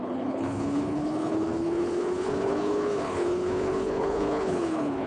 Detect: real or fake fake